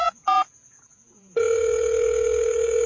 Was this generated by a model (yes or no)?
yes